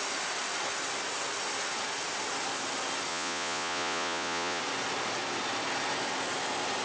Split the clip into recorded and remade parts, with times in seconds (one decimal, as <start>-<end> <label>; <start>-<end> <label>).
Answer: 0.0-3.1 recorded; 3.1-4.6 remade; 4.6-6.8 recorded